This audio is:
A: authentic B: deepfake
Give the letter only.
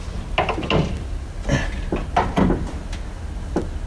A